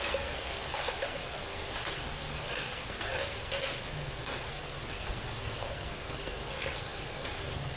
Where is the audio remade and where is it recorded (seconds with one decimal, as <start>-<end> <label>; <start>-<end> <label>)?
0.0-7.8 remade